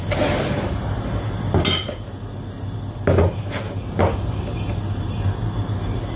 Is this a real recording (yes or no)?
yes